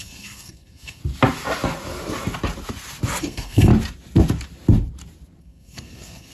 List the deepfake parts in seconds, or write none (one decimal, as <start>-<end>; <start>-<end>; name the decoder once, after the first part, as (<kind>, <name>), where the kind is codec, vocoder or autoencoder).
0.0-1.0 (codec, SNAC); 3.2-3.7; 5.4-6.3